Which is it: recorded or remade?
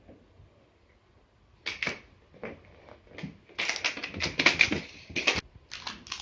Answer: recorded